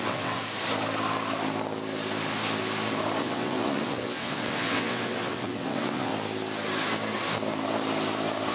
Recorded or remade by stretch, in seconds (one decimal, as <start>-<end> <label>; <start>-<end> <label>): 0.0-0.4 remade; 0.4-3.2 recorded; 3.2-6.1 remade; 6.1-8.5 recorded